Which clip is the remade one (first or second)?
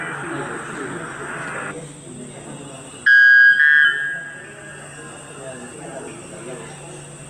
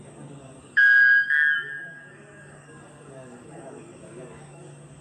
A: second